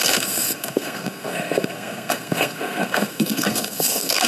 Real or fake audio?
fake